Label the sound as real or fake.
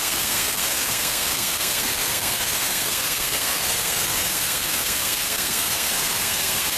fake